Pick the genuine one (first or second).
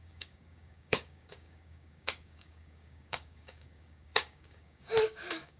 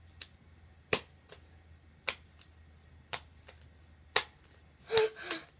second